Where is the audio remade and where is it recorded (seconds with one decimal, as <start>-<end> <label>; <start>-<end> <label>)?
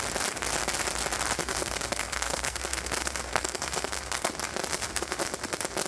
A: 0.0-1.4 recorded; 1.4-4.3 remade; 4.3-4.7 recorded; 4.7-5.2 remade; 5.2-5.9 recorded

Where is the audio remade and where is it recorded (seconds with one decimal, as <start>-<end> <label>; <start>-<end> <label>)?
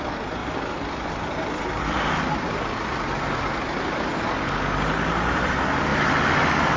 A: 0.0-6.8 recorded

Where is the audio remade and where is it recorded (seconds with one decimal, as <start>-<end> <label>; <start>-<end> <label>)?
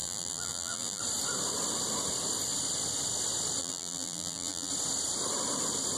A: 0.0-1.0 remade; 1.0-3.6 recorded; 3.6-4.7 remade; 4.7-6.0 recorded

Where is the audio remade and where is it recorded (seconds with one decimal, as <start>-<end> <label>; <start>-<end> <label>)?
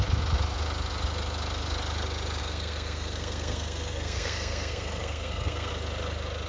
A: 0.0-2.4 recorded; 2.4-5.7 remade; 5.7-6.5 recorded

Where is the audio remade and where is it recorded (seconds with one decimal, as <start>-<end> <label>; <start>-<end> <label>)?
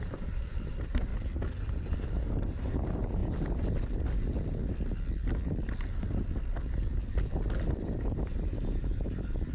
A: 0.0-1.1 remade; 1.1-2.2 recorded; 2.2-3.2 remade; 3.2-8.0 recorded; 8.0-9.5 remade